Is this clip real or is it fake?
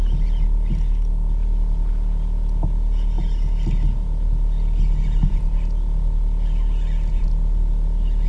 real